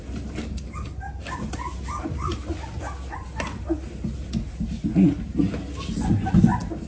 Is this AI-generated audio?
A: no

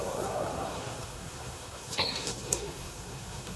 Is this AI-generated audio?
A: yes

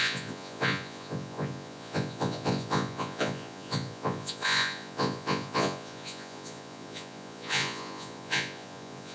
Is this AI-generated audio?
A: yes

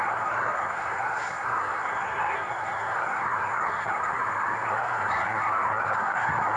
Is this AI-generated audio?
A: yes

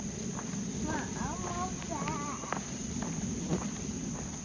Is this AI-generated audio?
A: no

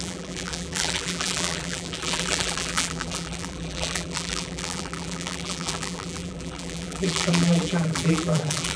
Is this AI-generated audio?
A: yes